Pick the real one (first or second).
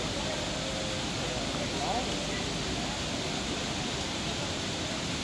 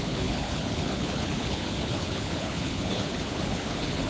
first